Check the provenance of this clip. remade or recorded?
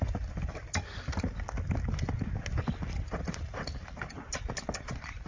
recorded